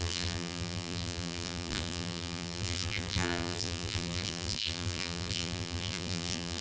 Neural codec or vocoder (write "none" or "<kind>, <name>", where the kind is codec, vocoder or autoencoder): vocoder, BigVGAN v2